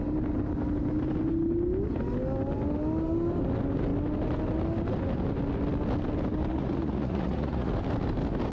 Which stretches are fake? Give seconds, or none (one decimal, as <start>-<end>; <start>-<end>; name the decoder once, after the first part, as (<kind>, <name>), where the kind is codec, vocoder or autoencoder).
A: 6.5-7.7 (vocoder, Vocos)